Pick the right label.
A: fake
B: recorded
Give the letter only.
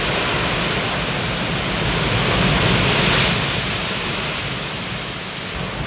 B